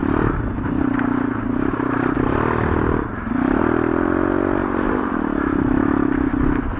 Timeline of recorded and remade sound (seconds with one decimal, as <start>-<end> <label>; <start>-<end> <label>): 0.0-4.6 recorded; 4.6-5.1 remade; 5.1-6.8 recorded